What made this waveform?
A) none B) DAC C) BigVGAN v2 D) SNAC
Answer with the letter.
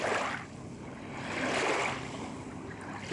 A